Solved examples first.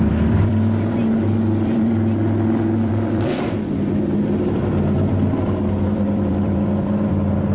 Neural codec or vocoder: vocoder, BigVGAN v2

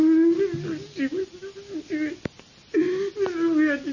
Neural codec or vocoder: none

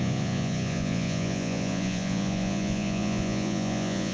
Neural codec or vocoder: vocoder, Vocos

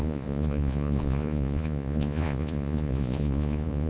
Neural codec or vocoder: vocoder, Vocos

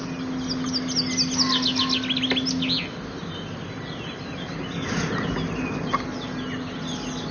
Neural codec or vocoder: none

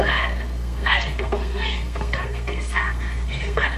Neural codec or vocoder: codec, SNAC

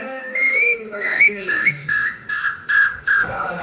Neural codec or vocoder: autoencoder, DAC-VAE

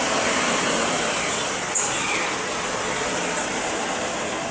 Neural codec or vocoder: none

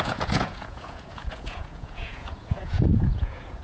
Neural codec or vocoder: vocoder, Vocos